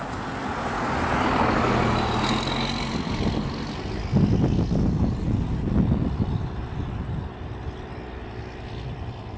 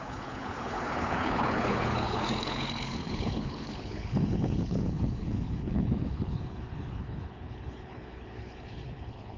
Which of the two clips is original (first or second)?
first